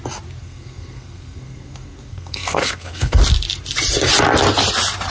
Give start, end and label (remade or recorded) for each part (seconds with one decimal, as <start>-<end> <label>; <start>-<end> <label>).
0.0-0.4 recorded; 0.4-3.2 remade; 3.2-5.1 recorded